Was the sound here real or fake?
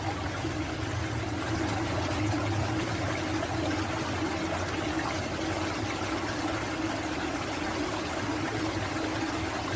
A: real